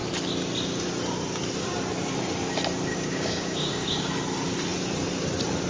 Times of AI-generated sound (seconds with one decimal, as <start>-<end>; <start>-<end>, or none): 2.9-4.1